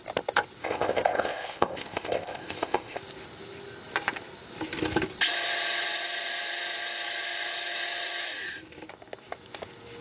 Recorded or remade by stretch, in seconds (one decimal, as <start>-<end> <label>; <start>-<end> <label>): 0.0-0.6 recorded; 0.6-3.0 remade; 3.0-10.0 recorded